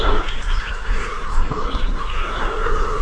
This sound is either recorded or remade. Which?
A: remade